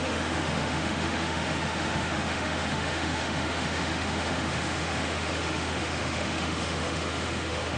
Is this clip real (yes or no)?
no